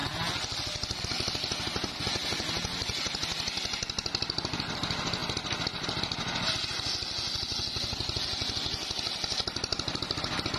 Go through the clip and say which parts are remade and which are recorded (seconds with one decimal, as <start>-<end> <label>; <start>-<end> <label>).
0.0-10.6 recorded